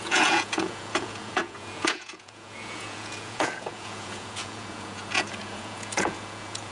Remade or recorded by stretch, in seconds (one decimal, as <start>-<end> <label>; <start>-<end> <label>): 0.0-6.7 remade